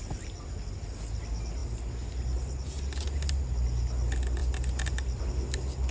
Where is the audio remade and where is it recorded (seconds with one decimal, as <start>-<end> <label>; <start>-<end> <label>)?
0.0-5.9 recorded